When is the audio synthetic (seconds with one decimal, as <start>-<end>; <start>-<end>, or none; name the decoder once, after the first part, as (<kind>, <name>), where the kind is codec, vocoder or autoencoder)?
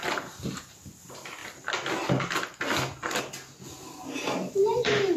0.0-1.4 (vocoder, BigVGAN v2); 4.5-5.2